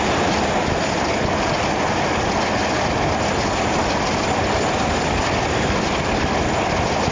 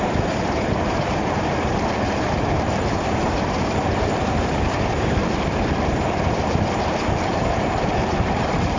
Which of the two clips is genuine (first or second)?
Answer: first